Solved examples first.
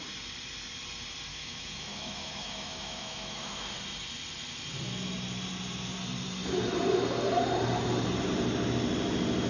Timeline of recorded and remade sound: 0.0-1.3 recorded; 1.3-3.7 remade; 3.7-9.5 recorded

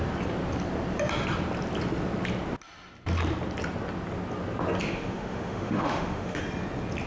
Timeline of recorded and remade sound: 0.0-4.8 recorded; 4.8-6.4 remade; 6.4-7.1 recorded

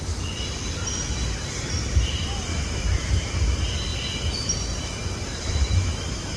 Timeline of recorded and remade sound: 0.0-2.5 recorded; 2.5-3.1 remade; 3.1-5.3 recorded; 5.3-6.4 remade

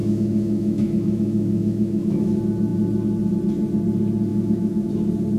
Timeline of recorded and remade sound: 0.0-2.3 remade; 2.3-4.3 recorded; 4.3-4.9 remade; 4.9-5.4 recorded

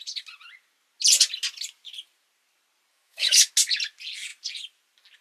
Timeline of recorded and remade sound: 0.0-2.9 recorded; 2.9-3.5 remade; 3.5-5.2 recorded

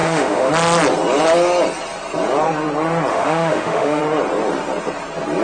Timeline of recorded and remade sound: 0.0-0.5 remade; 0.5-3.1 recorded; 3.1-4.0 remade; 4.0-5.4 recorded

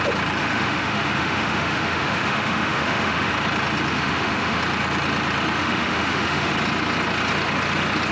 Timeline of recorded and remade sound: 0.0-0.4 recorded; 0.4-3.3 remade; 3.3-3.9 recorded; 3.9-4.6 remade; 4.6-5.6 recorded; 5.6-6.5 remade; 6.5-8.1 recorded

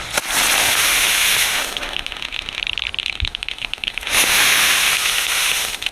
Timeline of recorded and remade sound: 0.0-0.6 recorded; 0.6-2.6 remade; 2.6-3.0 recorded; 3.0-5.9 remade